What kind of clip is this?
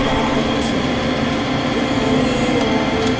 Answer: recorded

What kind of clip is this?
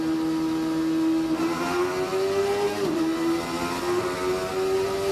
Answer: recorded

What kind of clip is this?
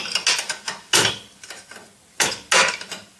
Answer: recorded